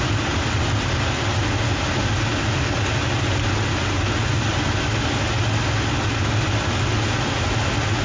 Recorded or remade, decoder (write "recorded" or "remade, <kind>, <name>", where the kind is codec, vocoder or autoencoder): recorded